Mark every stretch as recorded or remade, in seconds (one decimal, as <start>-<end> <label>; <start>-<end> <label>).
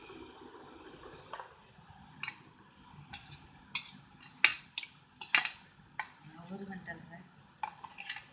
0.0-2.5 remade; 2.5-8.3 recorded